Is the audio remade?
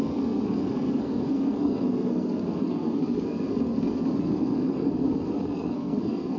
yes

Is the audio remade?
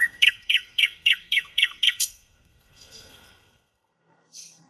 yes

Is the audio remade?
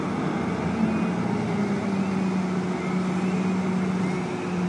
no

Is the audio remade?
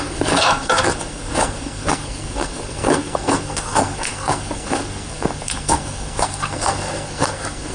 yes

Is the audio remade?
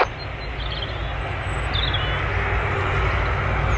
no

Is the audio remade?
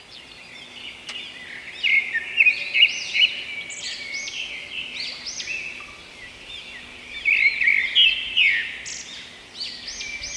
no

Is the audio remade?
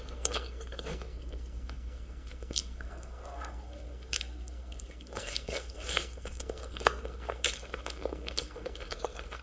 yes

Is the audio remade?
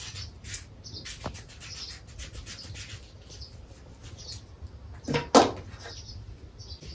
no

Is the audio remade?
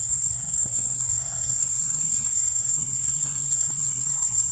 yes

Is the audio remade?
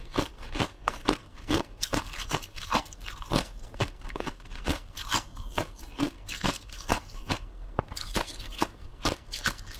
yes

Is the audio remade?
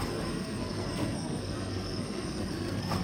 yes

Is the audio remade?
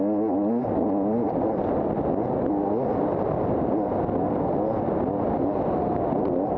no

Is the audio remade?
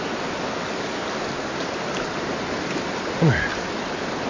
no